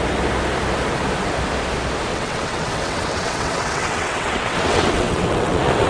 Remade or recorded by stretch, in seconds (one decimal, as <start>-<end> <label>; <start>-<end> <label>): 0.0-2.1 recorded; 2.1-5.9 remade